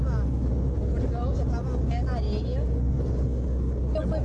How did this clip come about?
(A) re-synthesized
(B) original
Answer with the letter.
B